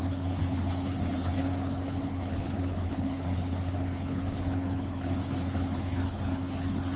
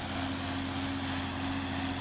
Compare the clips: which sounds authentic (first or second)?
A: second